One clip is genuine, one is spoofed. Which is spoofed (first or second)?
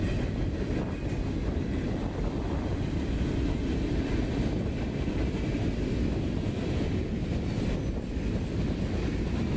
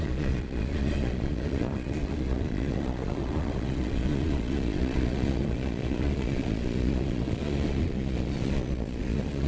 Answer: second